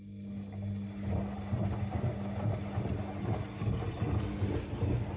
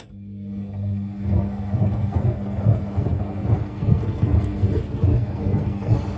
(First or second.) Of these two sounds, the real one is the first